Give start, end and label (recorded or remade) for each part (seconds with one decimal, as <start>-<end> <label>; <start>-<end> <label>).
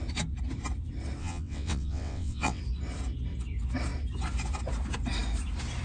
0.0-1.2 recorded; 1.2-2.6 remade; 2.6-5.8 recorded